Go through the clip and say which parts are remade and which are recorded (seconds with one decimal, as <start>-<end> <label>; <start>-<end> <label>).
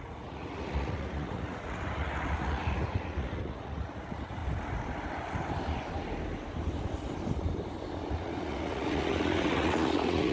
0.0-4.4 remade; 4.4-8.1 recorded; 8.1-10.3 remade